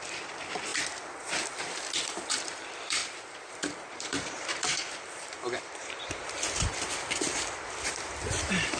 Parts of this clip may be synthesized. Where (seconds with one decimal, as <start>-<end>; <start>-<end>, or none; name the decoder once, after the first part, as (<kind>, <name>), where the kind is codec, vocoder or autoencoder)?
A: 0.0-0.7 (vocoder, BigVGAN v2); 2.0-3.0; 3.5-8.8